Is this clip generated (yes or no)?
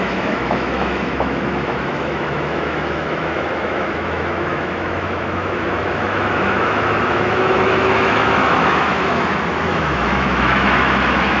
yes